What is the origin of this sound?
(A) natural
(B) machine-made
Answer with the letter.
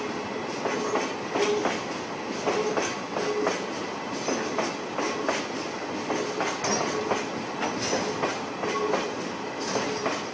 A